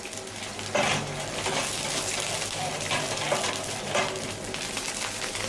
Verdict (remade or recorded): recorded